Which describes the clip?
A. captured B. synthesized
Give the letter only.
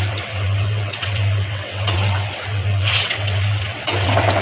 B